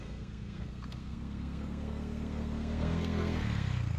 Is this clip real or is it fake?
fake